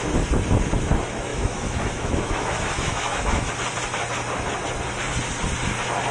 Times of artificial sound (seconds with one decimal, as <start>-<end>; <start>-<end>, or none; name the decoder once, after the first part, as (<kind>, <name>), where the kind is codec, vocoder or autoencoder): 1.3-3.5 (autoencoder, DAC-VAE)